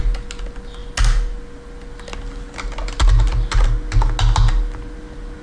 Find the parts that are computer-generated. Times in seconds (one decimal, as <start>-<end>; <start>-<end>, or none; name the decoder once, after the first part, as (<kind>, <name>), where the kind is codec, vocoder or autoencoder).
none